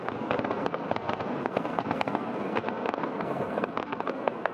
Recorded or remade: remade